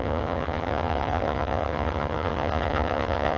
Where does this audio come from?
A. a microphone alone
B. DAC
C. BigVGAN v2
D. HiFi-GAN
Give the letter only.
D